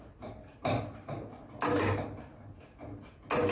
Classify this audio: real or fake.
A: real